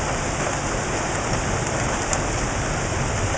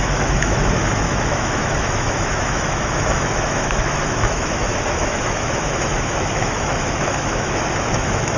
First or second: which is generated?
second